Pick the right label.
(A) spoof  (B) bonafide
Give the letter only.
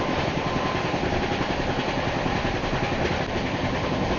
B